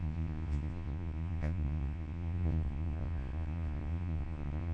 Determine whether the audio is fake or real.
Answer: fake